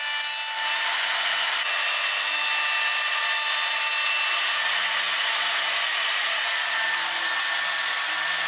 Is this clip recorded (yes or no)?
yes